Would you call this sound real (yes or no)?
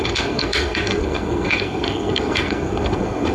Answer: no